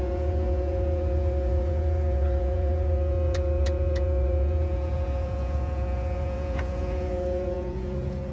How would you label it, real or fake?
fake